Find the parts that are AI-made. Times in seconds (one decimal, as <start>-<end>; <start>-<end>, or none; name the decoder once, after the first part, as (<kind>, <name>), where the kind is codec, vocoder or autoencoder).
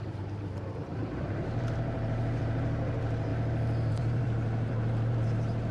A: 0.0-3.3 (vocoder, BigVGAN v2); 3.9-5.7